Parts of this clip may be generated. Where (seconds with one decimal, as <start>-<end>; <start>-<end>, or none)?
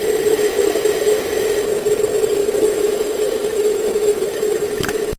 2.4-5.2